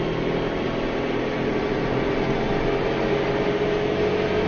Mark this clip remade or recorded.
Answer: recorded